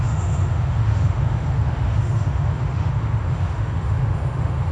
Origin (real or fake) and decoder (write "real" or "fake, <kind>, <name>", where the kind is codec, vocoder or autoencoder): fake, autoencoder, DAC-VAE